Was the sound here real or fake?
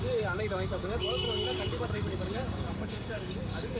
fake